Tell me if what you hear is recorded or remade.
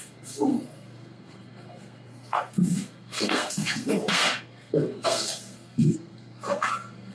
remade